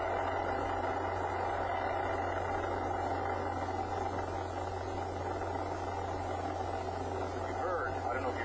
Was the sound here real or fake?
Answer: real